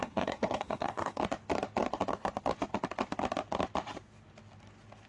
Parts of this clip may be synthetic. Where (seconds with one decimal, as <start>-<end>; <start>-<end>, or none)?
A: 0.0-1.2